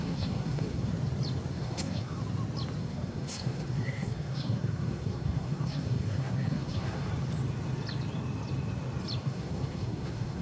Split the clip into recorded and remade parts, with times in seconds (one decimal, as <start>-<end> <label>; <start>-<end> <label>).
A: 0.0-0.9 remade; 0.9-1.5 recorded; 1.5-2.2 remade; 2.2-2.8 recorded; 2.8-7.1 remade; 7.1-9.2 recorded; 9.2-10.4 remade